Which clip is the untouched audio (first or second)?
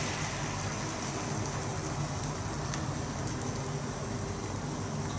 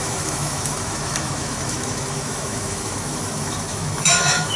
first